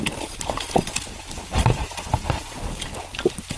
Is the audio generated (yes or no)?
no